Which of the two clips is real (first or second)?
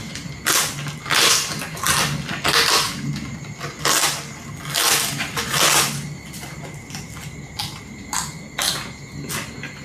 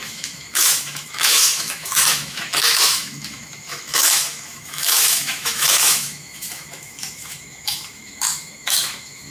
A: first